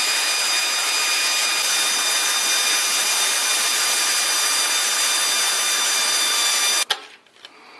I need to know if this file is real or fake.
real